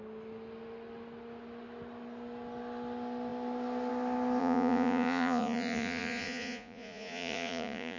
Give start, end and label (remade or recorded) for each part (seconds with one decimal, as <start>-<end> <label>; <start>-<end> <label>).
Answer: 0.0-4.4 recorded; 4.4-8.0 remade